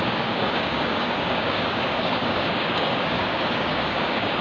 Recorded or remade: remade